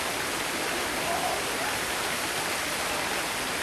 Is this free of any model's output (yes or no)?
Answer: yes